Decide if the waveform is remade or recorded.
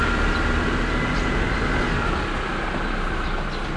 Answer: recorded